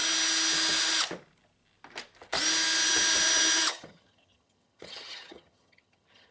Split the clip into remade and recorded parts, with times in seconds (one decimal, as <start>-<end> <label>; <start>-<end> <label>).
0.0-3.7 recorded; 3.7-6.3 remade